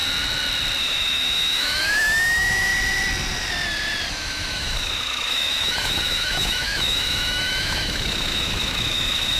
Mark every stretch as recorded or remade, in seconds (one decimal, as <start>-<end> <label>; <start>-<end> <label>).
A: 0.0-0.8 recorded; 0.8-2.7 remade; 2.7-4.1 recorded; 4.1-9.4 remade